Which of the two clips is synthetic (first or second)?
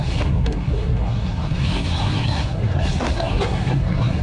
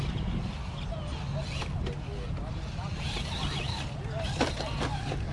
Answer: first